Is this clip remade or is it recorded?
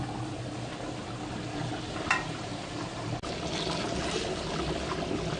recorded